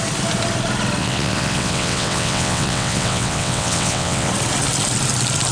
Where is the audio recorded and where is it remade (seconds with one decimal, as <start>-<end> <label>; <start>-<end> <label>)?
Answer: 0.0-1.0 recorded; 1.0-4.3 remade; 4.3-5.5 recorded